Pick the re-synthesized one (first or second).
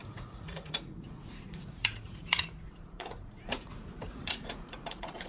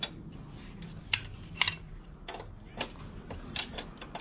first